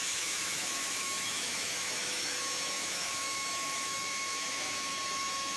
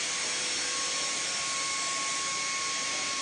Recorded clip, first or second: second